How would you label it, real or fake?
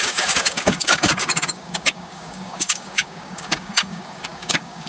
fake